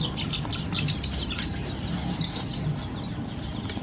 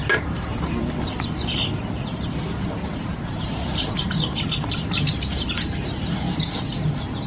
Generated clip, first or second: second